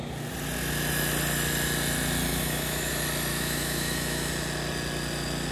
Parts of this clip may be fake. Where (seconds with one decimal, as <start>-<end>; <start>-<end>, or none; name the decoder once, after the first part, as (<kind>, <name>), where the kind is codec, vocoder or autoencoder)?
2.3-2.9 (autoencoder, DAC-VAE); 3.3-4.3